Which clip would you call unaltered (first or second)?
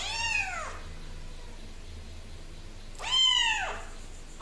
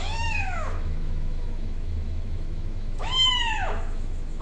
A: first